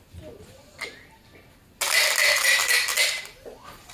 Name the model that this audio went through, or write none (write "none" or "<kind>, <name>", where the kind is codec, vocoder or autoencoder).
none